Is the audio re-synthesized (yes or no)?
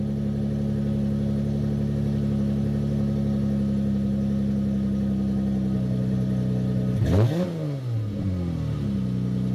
no